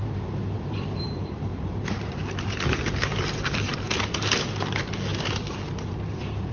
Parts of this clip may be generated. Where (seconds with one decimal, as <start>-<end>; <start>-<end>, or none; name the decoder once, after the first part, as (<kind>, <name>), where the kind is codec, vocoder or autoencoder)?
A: 0.0-6.5 (vocoder, BigVGAN v2)